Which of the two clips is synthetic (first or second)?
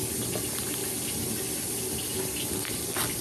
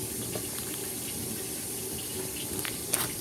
second